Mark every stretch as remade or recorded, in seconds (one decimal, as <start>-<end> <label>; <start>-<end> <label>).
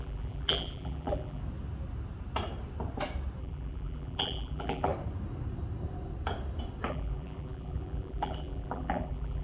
0.0-1.4 remade; 1.4-3.4 recorded; 3.4-4.9 remade; 4.9-6.9 recorded; 6.9-9.4 remade